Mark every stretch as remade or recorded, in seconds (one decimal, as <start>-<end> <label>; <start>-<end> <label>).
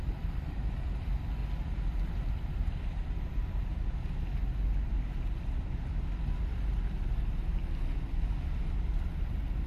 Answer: 0.0-1.4 remade; 1.4-2.3 recorded; 2.3-3.7 remade; 3.7-6.4 recorded; 6.4-7.6 remade; 7.6-9.7 recorded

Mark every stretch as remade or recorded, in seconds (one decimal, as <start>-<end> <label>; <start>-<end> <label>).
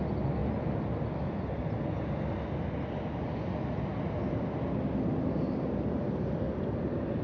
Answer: 0.0-0.4 recorded; 0.4-1.6 remade; 1.6-7.2 recorded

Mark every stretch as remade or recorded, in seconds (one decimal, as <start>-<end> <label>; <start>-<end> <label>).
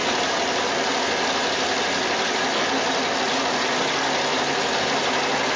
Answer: 0.0-5.6 recorded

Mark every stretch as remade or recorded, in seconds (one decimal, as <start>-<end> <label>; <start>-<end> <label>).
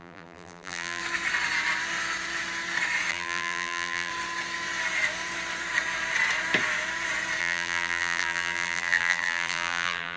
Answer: 0.0-1.0 remade; 1.0-3.1 recorded; 3.1-4.1 remade; 4.1-7.4 recorded; 7.4-10.2 remade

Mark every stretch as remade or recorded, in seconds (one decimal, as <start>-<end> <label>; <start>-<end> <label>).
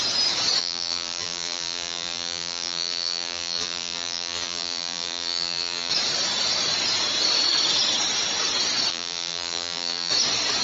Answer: 0.0-0.6 recorded; 0.6-5.9 remade; 5.9-8.9 recorded; 8.9-10.1 remade; 10.1-10.6 recorded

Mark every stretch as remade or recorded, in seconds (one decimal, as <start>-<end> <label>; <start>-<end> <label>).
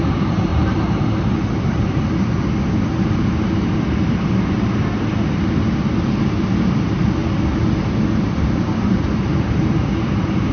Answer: 0.0-5.1 remade; 5.1-6.0 recorded; 6.0-7.2 remade; 7.2-8.2 recorded; 8.2-10.5 remade